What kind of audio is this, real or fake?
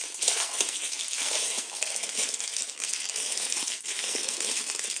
fake